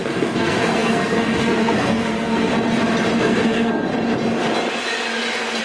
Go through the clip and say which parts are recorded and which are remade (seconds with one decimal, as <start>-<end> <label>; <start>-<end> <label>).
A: 0.0-2.5 remade; 2.5-3.2 recorded; 3.2-3.9 remade; 3.9-5.6 recorded